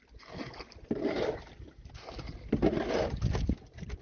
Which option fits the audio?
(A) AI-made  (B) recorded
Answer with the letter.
A